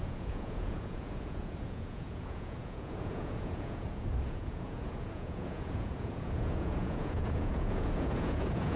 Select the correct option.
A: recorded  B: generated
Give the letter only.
B